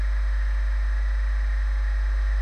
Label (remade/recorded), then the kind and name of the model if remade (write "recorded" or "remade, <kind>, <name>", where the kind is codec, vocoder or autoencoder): recorded